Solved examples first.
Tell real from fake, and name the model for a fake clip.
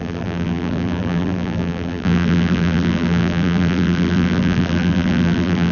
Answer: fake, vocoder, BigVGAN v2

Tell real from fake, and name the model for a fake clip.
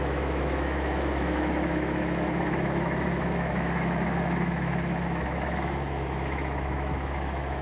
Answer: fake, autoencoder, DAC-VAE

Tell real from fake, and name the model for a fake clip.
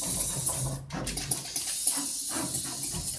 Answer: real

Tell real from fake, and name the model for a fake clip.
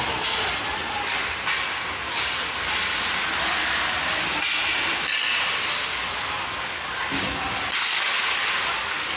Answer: real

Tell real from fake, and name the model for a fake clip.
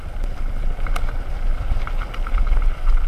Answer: real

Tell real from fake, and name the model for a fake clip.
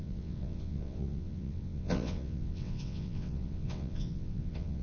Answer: fake, vocoder, WaveNeXt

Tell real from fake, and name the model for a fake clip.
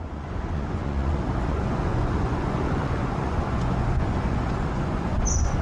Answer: fake, vocoder, Vocos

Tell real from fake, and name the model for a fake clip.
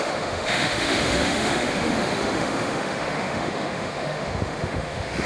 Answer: fake, autoencoder, DAC-VAE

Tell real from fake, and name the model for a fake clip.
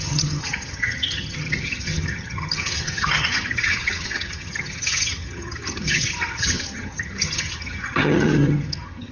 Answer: fake, vocoder, HiFi-GAN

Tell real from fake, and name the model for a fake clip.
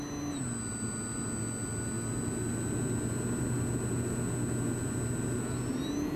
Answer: real